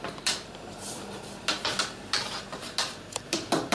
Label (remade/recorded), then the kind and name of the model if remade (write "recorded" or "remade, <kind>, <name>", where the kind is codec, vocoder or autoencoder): recorded